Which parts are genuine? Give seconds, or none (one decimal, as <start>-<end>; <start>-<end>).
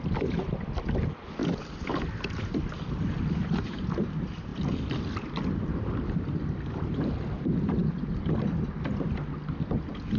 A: 0.0-10.2